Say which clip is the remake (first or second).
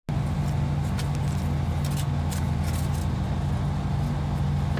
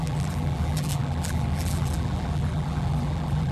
second